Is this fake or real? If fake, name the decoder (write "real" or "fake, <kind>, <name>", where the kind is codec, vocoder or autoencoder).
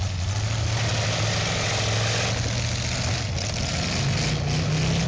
real